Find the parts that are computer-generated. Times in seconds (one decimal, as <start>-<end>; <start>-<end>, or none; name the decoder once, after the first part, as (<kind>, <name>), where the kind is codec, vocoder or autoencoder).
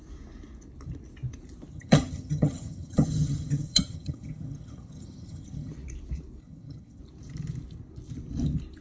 1.7-5.7 (vocoder, HiFi-GAN); 6.4-7.0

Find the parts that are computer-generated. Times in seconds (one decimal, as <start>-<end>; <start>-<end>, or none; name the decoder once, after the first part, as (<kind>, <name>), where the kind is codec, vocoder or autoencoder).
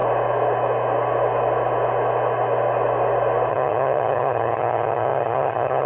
3.5-5.9 (vocoder, HiFi-GAN)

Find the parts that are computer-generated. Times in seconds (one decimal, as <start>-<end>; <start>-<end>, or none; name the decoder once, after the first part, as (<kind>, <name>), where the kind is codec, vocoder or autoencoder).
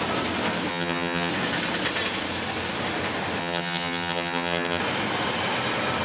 0.7-1.3 (vocoder, HiFi-GAN); 3.4-4.8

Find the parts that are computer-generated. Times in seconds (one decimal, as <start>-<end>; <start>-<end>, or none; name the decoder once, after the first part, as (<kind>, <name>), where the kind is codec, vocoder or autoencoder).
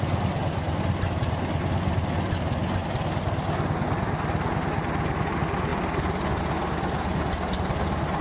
none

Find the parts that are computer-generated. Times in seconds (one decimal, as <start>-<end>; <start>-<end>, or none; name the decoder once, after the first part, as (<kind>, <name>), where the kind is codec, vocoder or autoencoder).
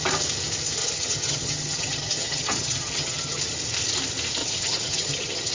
0.8-3.4 (vocoder, HiFi-GAN); 4.4-5.5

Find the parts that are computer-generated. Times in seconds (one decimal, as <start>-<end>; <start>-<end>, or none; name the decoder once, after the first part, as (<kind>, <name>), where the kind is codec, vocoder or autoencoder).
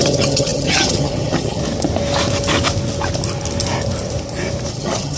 0.0-1.6 (vocoder, HiFi-GAN); 4.7-5.2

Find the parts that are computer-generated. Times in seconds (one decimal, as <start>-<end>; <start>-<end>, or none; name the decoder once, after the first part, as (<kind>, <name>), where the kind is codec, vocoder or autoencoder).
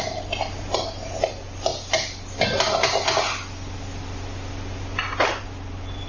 none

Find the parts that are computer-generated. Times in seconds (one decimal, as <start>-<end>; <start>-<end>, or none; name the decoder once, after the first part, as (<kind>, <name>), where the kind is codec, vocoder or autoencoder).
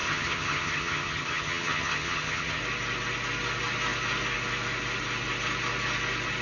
0.0-2.6 (vocoder, HiFi-GAN)